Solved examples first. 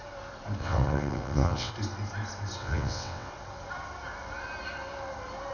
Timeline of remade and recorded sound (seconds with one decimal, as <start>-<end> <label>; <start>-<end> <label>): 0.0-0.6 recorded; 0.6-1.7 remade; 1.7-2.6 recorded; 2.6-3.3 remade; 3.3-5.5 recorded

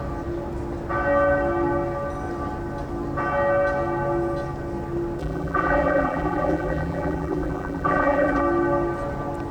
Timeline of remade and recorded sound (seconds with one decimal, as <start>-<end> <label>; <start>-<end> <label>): 0.0-5.2 recorded; 5.2-8.4 remade; 8.4-9.5 recorded

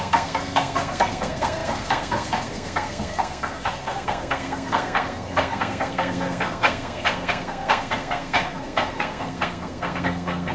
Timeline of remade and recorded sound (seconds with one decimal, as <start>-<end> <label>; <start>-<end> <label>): 0.0-10.5 remade

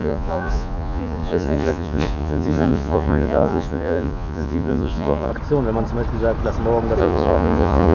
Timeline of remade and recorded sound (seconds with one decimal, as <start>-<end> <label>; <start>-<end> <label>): 0.0-5.3 remade; 5.3-7.0 recorded; 7.0-7.9 remade

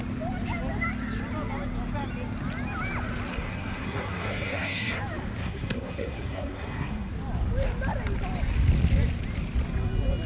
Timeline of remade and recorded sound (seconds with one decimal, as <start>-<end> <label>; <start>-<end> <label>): 0.0-3.3 recorded; 3.3-5.0 remade; 5.0-5.4 recorded; 5.4-7.1 remade; 7.1-10.3 recorded

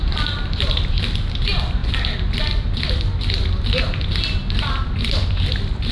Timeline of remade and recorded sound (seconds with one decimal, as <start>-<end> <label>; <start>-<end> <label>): 0.0-5.9 recorded